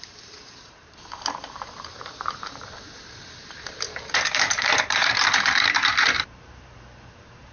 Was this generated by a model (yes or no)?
yes